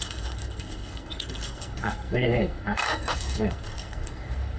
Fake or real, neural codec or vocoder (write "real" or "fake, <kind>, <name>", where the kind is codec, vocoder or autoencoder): fake, codec, SNAC